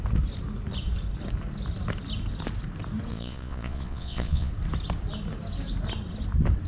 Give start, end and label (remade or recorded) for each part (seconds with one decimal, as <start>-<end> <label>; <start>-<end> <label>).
0.0-3.1 recorded; 3.1-4.5 remade; 4.5-6.7 recorded